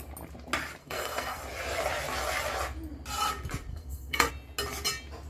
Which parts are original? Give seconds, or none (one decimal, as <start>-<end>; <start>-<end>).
0.0-0.8; 1.4-3.7; 4.3-5.3